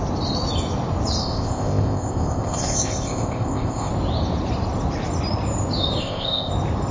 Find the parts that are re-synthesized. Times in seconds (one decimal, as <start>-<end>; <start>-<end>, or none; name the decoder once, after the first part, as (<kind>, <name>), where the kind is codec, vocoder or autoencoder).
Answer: 1.2-3.9 (codec, ZipCodec); 6.0-6.5